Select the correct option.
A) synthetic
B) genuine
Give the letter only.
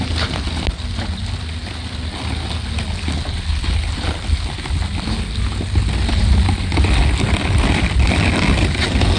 B